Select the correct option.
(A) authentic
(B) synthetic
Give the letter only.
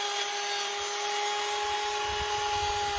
A